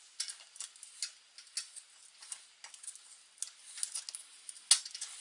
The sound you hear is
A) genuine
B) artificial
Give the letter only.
A